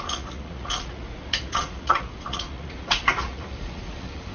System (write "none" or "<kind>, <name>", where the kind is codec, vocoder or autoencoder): vocoder, Vocos